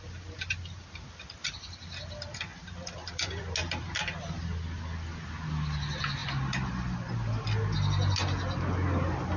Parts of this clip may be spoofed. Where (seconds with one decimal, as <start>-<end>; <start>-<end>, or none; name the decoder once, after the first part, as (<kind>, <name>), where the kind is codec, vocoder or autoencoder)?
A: 2.5-3.4 (vocoder, BigVGAN v2)